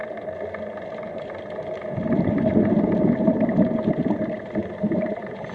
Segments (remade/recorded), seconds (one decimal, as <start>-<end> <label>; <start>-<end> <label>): 0.0-5.5 recorded